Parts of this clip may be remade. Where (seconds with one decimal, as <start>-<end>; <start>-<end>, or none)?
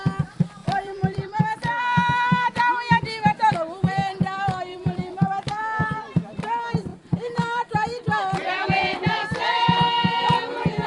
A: 0.6-1.8; 4.7-5.6; 6.9-8.0